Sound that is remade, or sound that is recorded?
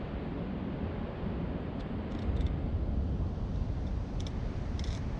recorded